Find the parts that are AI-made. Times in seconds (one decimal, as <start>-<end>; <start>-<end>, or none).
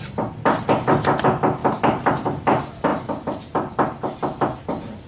none